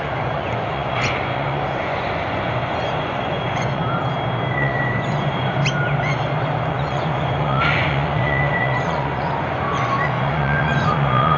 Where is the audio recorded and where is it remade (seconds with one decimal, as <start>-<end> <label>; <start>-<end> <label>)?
0.0-3.8 remade; 3.8-4.5 recorded; 4.5-5.6 remade; 5.6-6.7 recorded; 6.7-11.4 remade